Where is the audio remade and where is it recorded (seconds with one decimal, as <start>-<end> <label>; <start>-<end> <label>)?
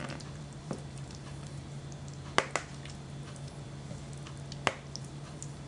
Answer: 0.0-1.6 remade; 1.6-5.0 recorded; 5.0-5.7 remade